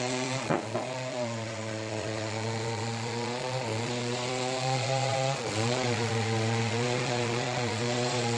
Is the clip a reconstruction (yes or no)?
yes